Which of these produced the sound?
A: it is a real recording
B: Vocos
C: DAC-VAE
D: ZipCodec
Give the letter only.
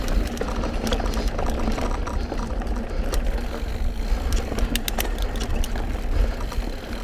A